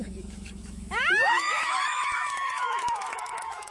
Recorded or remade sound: remade